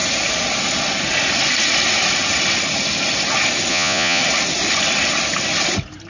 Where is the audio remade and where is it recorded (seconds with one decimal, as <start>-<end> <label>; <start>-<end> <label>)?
0.0-3.7 recorded; 3.7-4.2 remade; 4.2-6.1 recorded